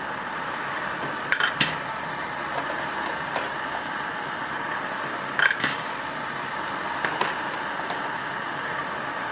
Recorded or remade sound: recorded